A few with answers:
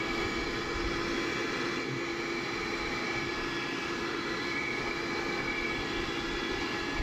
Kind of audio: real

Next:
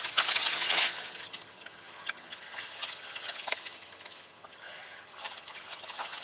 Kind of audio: fake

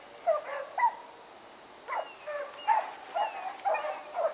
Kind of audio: real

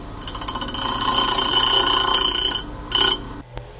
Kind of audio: real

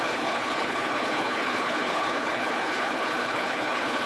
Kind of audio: fake